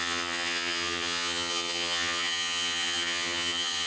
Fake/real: fake